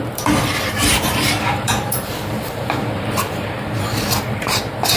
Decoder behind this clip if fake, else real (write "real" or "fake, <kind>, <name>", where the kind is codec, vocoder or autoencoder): fake, vocoder, BigVGAN v2